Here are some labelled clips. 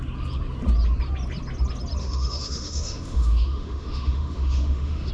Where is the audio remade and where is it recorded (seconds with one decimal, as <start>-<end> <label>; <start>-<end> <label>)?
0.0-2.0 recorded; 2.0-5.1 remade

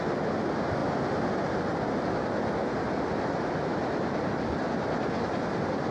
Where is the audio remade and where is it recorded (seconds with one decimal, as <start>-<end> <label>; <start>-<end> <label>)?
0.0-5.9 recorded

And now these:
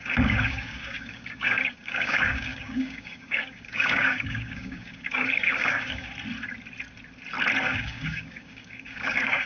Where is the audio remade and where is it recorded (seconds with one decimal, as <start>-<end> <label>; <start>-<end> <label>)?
0.0-6.1 remade; 6.1-7.6 recorded; 7.6-9.5 remade